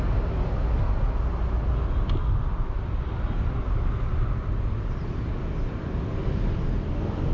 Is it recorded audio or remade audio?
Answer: recorded